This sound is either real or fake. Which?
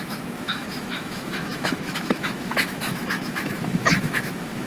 fake